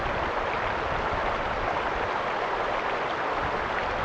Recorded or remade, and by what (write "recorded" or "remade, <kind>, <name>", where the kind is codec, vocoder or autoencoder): recorded